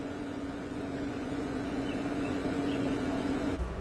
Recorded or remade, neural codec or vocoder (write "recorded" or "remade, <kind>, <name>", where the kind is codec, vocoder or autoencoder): remade, vocoder, Vocos